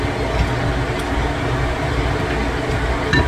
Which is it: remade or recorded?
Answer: recorded